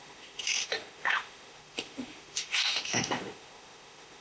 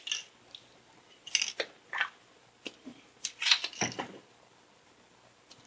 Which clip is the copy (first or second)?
first